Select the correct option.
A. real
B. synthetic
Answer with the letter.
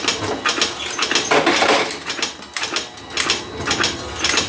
A